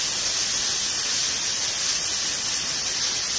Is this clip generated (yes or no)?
no